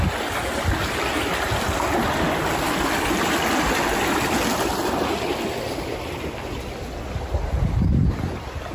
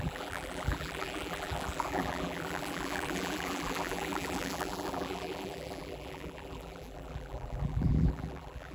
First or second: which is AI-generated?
second